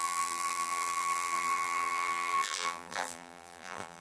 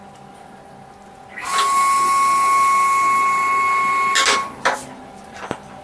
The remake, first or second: first